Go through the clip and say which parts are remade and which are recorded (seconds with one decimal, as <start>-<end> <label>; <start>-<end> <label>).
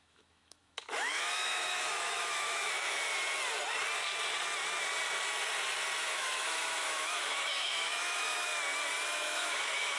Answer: 0.0-3.1 remade; 3.1-6.0 recorded; 6.0-8.5 remade; 8.5-9.1 recorded; 9.1-10.0 remade